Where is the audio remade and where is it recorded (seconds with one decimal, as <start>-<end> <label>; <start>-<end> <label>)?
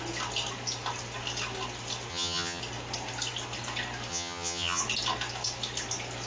0.0-2.1 recorded; 2.1-2.6 remade; 2.6-4.1 recorded; 4.1-4.8 remade; 4.8-6.3 recorded